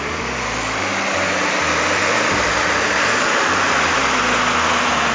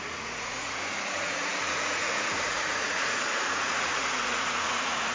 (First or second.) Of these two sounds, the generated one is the second